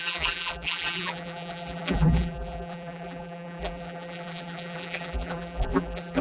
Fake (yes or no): yes